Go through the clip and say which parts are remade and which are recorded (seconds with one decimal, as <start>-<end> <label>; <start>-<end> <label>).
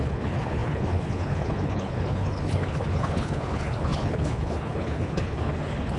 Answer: 0.0-6.0 remade